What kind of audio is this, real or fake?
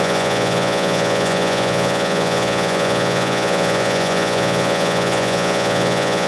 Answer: fake